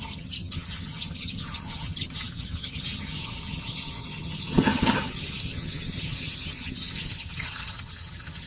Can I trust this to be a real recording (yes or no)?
no